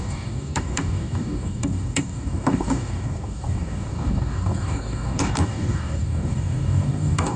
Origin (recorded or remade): remade